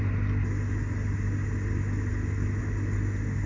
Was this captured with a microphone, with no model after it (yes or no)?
yes